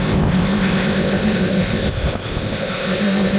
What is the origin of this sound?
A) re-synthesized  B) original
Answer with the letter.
A